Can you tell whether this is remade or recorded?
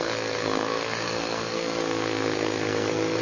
remade